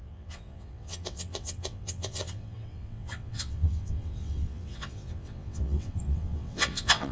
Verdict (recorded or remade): remade